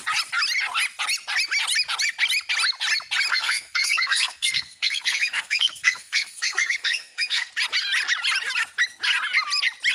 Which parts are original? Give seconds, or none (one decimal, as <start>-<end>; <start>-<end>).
0.0-3.3; 7.5-9.9